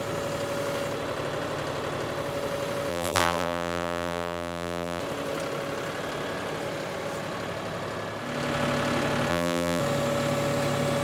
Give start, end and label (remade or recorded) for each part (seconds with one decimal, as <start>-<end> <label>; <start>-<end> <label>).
0.0-2.9 recorded; 2.9-5.0 remade; 5.0-9.3 recorded; 9.3-9.8 remade; 9.8-11.0 recorded